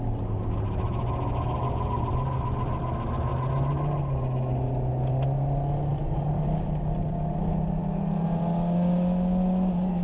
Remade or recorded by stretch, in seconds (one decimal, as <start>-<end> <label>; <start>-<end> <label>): 0.0-10.0 recorded